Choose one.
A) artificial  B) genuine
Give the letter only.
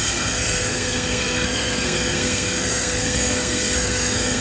A